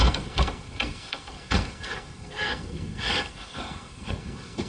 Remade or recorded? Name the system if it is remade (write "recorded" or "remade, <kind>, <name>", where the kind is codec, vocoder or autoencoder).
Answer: remade, codec, SNAC